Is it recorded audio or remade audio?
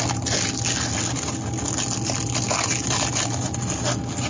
recorded